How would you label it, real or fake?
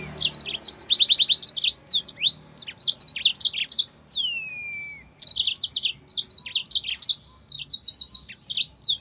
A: real